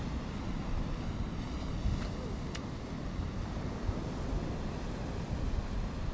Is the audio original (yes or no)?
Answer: yes